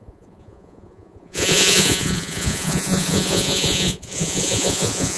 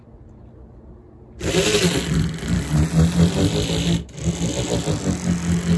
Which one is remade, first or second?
first